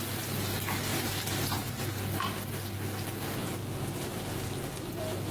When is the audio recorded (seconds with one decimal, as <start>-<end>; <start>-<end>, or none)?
0.0-0.9; 1.8-3.4; 4.2-5.3